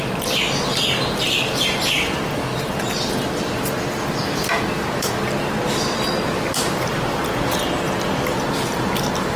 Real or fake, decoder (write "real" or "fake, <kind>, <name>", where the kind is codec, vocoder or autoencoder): real